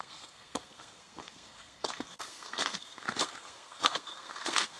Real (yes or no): no